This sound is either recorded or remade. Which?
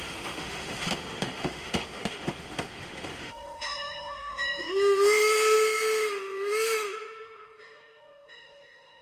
remade